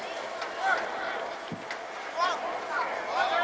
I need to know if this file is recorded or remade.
recorded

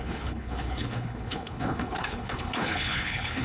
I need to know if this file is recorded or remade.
remade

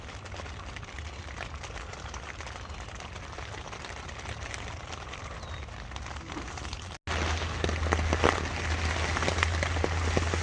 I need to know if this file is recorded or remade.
recorded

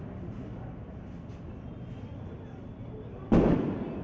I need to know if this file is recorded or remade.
recorded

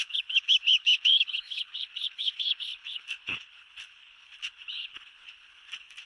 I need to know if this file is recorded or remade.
remade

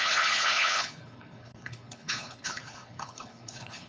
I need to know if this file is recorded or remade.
remade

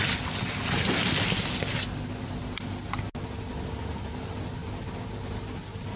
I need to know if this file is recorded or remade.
recorded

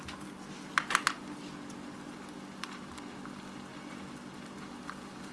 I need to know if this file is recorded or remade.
recorded